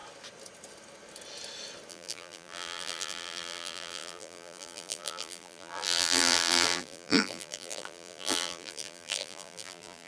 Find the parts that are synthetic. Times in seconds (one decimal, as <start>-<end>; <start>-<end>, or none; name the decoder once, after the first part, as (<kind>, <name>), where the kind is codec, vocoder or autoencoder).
1.9-10.1 (vocoder, BigVGAN v2)